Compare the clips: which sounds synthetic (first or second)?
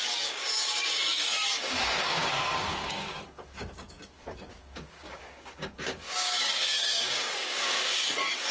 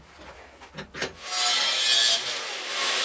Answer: first